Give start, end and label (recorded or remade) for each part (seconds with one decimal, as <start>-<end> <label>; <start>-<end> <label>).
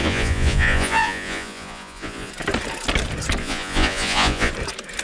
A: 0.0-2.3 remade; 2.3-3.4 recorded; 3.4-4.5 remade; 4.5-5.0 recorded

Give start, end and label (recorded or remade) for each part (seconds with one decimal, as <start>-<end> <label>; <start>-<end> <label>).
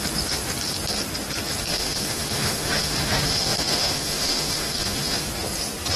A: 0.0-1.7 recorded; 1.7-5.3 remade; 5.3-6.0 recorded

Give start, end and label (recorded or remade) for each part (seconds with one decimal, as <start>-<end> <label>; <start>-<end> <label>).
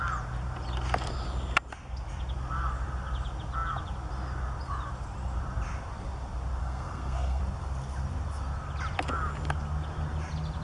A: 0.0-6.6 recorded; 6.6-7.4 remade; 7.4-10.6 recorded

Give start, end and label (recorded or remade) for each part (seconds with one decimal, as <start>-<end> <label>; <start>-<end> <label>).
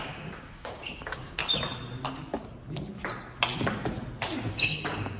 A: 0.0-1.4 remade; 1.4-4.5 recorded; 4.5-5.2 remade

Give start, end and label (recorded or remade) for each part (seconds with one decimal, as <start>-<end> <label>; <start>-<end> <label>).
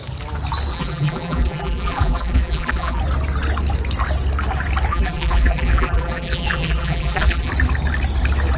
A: 0.0-0.7 recorded; 0.7-3.0 remade; 3.0-4.9 recorded; 4.9-7.5 remade; 7.5-8.6 recorded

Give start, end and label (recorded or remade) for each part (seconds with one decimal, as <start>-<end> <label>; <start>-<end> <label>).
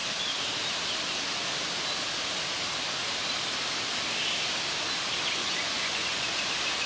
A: 0.0-5.4 recorded; 5.4-6.4 remade; 6.4-6.9 recorded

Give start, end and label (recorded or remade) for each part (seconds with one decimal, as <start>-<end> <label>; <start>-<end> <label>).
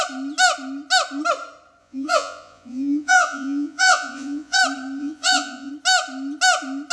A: 0.0-1.8 recorded; 1.8-4.6 remade; 4.6-5.0 recorded; 5.0-5.7 remade; 5.7-6.9 recorded